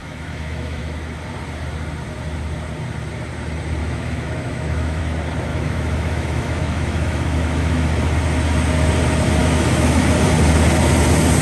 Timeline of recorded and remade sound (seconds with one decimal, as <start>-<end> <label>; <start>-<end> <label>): 0.0-0.8 remade; 0.8-3.8 recorded; 3.8-5.0 remade; 5.0-5.5 recorded; 5.5-7.9 remade; 7.9-9.4 recorded; 9.4-10.0 remade; 10.0-11.4 recorded